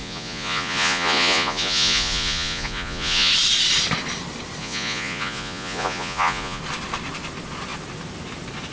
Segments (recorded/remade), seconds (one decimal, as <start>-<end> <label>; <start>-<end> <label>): 0.0-3.3 remade; 3.3-4.6 recorded; 4.6-6.6 remade; 6.6-8.7 recorded